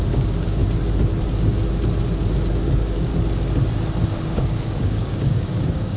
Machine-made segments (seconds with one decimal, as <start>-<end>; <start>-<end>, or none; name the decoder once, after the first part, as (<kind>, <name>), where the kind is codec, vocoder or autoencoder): 0.0-0.6 (codec, DAC); 2.5-3.1; 4.2-6.0